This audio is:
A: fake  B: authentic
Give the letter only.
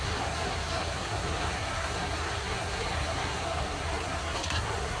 A